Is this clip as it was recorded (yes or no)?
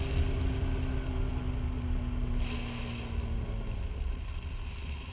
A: yes